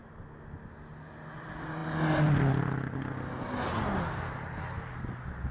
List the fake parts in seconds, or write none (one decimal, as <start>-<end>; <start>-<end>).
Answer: none